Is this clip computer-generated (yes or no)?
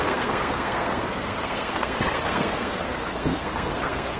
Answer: yes